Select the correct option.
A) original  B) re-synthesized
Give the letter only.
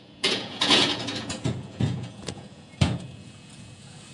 B